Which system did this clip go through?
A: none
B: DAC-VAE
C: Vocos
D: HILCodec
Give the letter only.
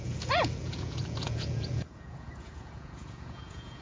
C